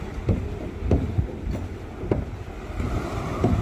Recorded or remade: recorded